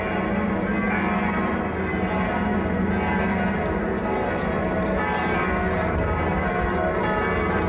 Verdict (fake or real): real